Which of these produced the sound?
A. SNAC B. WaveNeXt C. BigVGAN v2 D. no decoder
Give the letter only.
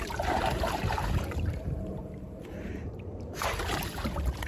C